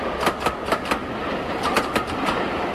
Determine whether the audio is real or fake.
real